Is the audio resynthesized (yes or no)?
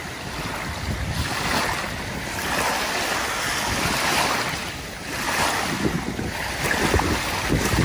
no